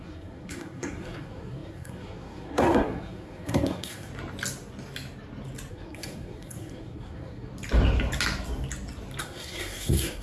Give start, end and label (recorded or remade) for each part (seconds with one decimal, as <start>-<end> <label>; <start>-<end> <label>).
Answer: 0.0-4.1 remade; 4.1-5.7 recorded; 5.7-7.5 remade; 7.5-9.2 recorded; 9.2-10.2 remade